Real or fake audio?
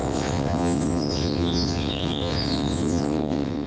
fake